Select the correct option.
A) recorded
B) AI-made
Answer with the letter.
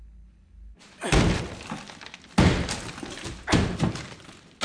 A